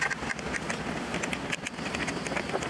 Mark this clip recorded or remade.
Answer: recorded